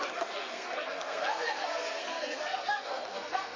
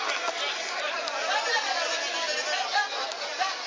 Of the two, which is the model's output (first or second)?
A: first